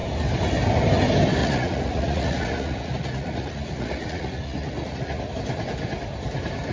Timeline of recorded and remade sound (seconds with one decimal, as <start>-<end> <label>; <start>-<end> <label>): 0.0-1.4 recorded; 1.4-5.3 remade; 5.3-6.7 recorded